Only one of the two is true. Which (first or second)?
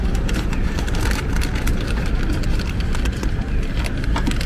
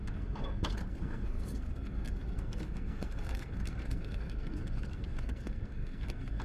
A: first